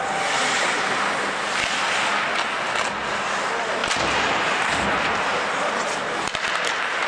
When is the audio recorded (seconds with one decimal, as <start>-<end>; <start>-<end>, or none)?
0.0-3.8; 5.7-7.1